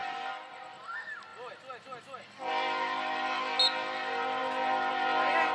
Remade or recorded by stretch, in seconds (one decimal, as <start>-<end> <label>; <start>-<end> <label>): 0.0-5.5 recorded